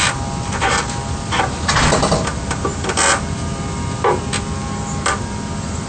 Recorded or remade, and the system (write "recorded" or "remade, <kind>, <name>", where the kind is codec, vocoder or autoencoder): recorded